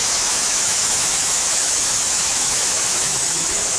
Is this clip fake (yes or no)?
yes